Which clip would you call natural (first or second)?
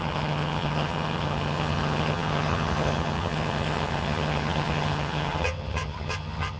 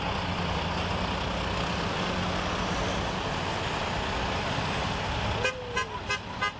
second